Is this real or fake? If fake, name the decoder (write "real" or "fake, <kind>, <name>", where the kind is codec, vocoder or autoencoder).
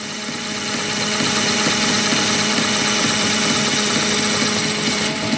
real